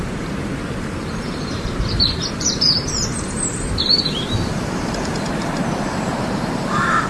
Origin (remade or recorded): remade